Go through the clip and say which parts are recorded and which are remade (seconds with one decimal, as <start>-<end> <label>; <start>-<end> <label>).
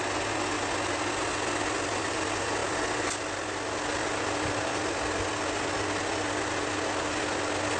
0.0-7.8 recorded